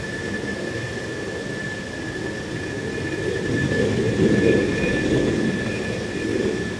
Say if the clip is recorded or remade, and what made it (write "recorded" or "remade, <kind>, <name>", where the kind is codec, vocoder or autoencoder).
recorded